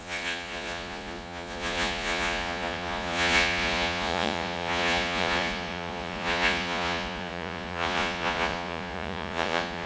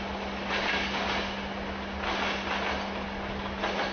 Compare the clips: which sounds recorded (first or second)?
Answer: second